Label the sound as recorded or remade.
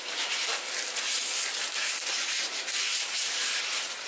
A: recorded